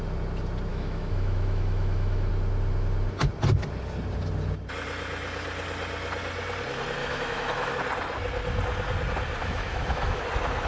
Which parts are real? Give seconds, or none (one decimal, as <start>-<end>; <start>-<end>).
0.0-0.7; 2.3-7.0; 7.7-9.4; 10.2-10.7